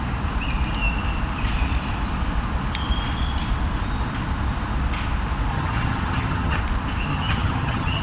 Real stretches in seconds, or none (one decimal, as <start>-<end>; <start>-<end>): 0.0-5.5; 6.6-7.1